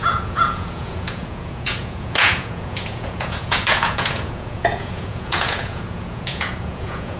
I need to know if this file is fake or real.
fake